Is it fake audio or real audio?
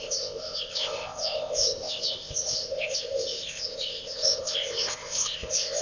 fake